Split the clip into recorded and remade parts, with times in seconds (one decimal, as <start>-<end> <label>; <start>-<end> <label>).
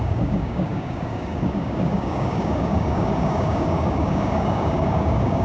0.0-5.4 remade